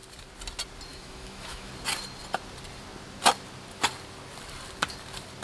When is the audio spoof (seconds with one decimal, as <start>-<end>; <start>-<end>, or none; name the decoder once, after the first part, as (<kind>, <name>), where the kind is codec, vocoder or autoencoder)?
0.9-1.7 (autoencoder, DAC-VAE)